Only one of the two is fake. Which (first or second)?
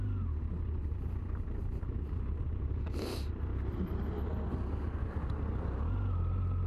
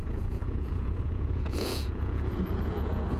second